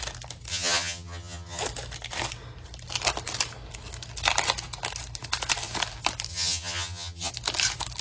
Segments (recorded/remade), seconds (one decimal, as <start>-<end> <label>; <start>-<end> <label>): 0.0-0.5 recorded; 0.5-1.6 remade; 1.6-6.3 recorded; 6.3-7.3 remade; 7.3-8.0 recorded